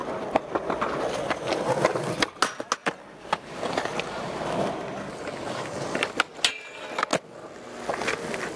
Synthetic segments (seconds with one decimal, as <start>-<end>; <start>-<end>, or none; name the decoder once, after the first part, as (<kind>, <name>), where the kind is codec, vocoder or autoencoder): 0.0-0.5 (vocoder, BigVGAN v2); 2.8-4.7